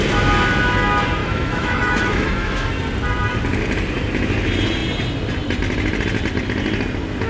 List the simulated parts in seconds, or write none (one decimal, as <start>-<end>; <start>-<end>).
1.2-2.7

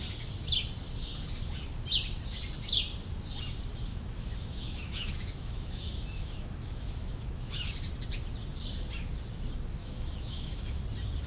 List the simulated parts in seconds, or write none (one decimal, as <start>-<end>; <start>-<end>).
3.9-7.7; 9.8-10.8

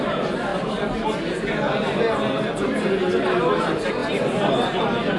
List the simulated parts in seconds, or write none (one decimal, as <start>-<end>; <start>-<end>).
none

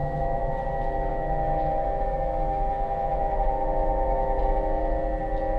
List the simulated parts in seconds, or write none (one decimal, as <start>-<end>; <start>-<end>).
0.0-0.5; 1.1-4.4

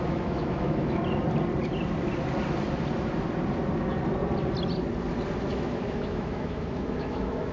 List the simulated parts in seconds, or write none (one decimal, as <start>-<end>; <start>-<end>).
0.0-1.0; 5.5-7.5

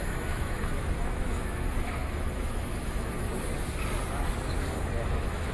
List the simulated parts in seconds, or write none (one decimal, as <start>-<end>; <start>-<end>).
0.0-3.3; 4.6-5.5

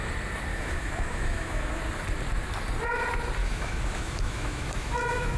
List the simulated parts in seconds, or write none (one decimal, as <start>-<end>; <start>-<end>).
0.5-1.8; 3.4-5.4